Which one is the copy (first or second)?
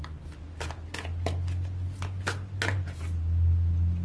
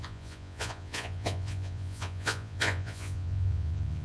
second